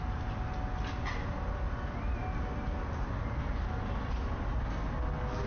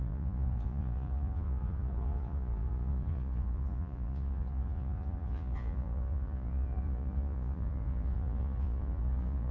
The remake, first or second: second